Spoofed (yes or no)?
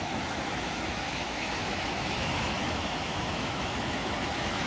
yes